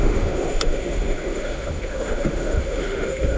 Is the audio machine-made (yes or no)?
yes